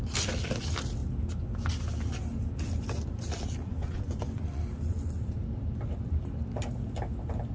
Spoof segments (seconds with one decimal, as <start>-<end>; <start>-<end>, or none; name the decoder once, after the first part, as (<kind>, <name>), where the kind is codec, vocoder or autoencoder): 3.7-4.6 (vocoder, Vocos)